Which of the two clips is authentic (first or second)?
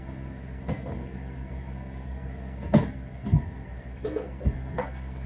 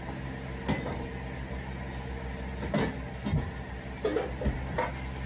second